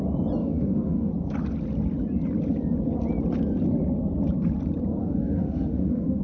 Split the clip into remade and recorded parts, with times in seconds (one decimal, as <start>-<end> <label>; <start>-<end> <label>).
0.0-0.4 recorded; 0.4-1.1 remade; 1.1-5.0 recorded; 5.0-6.2 remade